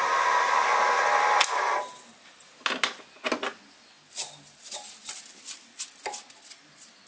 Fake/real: real